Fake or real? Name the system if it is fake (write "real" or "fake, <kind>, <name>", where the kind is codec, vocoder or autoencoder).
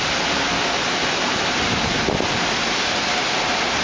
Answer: real